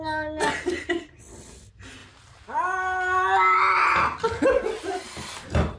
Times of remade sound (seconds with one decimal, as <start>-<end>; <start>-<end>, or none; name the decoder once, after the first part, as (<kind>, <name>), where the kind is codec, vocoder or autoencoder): none